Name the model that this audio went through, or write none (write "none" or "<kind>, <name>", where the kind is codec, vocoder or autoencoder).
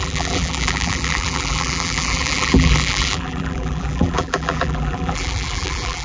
vocoder, BigVGAN v2